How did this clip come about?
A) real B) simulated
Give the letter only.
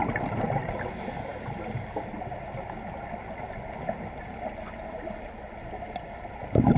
A